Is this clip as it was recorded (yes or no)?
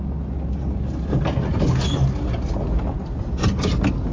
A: yes